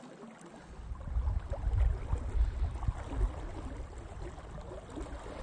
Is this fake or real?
real